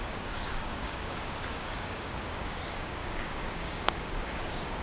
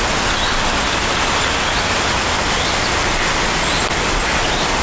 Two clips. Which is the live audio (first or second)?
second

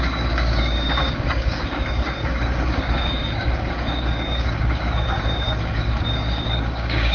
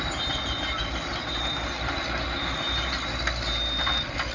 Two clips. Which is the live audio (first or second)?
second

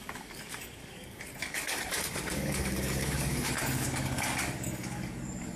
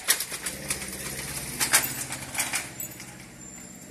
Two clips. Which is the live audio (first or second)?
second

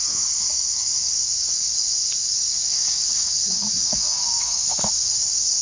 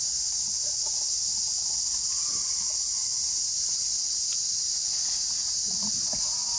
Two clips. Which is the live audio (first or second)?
second